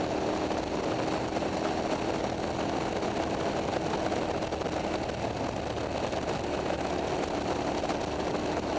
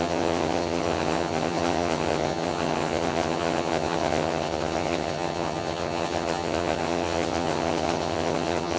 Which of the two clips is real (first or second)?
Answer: first